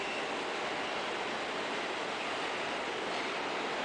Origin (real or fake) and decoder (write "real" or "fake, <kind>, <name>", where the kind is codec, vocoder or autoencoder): real